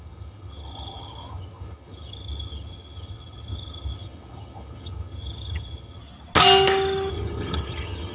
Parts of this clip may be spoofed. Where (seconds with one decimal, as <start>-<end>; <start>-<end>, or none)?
0.0-6.0; 7.1-8.1